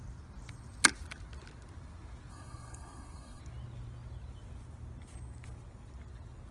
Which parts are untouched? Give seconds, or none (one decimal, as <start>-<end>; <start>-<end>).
0.0-2.3; 3.4-6.5